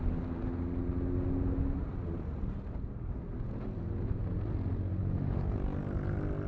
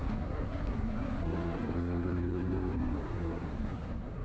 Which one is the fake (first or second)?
second